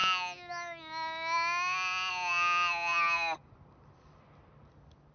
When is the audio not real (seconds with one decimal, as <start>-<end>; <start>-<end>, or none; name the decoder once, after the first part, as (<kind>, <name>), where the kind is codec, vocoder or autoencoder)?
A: none